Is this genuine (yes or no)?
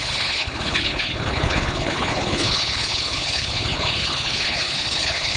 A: no